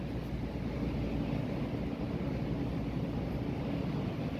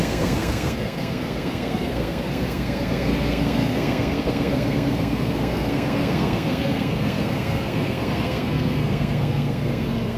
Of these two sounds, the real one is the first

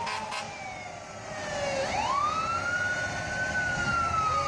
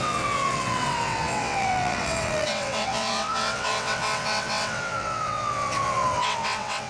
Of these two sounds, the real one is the first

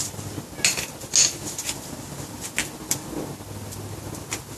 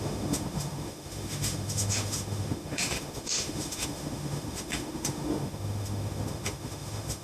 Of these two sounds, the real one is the first